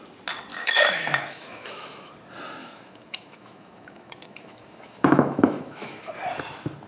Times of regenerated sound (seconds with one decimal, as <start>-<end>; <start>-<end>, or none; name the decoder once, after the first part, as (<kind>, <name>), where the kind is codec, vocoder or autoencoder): 0.5-2.1 (autoencoder, DAC-VAE); 2.6-6.1